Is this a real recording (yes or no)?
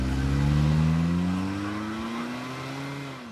yes